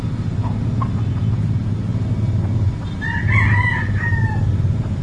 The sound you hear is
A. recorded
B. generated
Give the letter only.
A